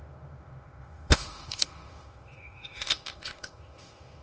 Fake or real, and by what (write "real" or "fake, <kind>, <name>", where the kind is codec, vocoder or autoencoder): fake, autoencoder, DAC-VAE